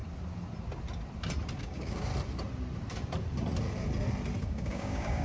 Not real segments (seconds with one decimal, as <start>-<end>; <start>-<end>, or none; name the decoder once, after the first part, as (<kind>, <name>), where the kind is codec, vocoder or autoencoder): 1.6-2.1 (codec, DAC); 4.4-5.2